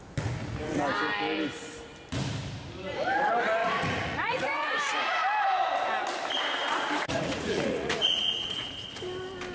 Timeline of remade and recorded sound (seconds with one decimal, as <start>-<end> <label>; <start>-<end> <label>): 0.0-3.6 recorded; 3.6-5.1 remade; 5.1-6.6 recorded; 6.6-8.9 remade; 8.9-9.5 recorded